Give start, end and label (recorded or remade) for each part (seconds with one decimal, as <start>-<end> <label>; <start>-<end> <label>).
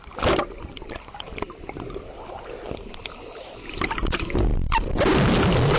0.0-5.8 recorded